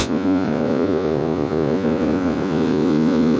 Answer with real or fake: fake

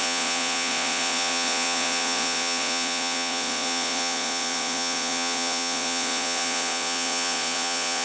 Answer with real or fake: fake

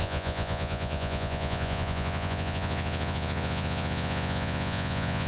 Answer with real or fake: fake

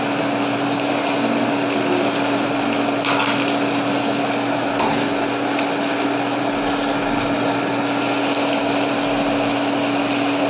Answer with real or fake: real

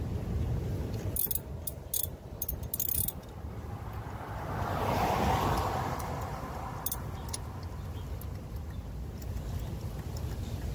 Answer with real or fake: real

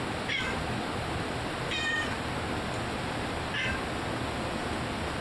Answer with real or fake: real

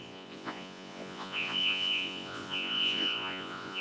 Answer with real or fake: fake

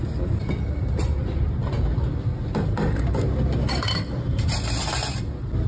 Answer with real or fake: real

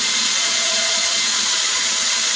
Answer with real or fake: fake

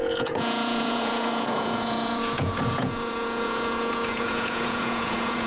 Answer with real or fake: fake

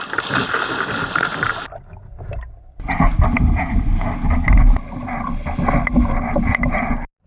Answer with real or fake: real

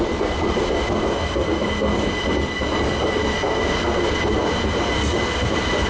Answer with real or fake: real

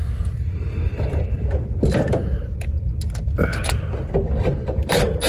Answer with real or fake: real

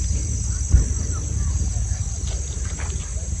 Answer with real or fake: real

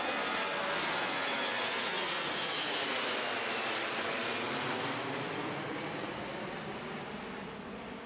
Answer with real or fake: real